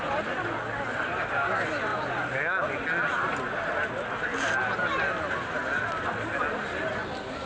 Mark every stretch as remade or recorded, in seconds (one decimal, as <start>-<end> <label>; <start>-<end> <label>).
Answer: 0.0-7.5 recorded